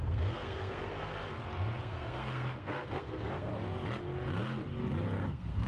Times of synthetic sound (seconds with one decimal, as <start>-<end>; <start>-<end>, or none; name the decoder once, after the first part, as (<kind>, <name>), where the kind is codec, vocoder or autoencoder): 0.0-1.1 (codec, SNAC); 1.8-3.5; 5.2-5.7